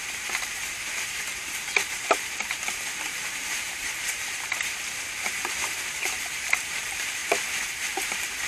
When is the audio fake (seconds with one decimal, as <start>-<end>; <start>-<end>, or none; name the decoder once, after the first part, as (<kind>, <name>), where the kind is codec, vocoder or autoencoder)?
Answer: 0.0-7.2 (vocoder, BigVGAN v2); 7.8-8.5